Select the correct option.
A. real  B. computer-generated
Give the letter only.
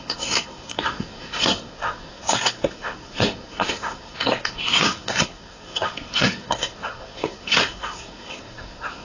B